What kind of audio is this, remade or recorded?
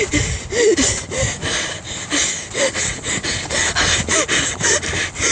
recorded